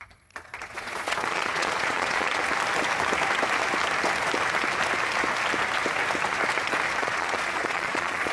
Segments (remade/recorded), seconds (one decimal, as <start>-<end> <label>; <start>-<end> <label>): 0.0-2.4 remade; 2.4-7.0 recorded; 7.0-8.3 remade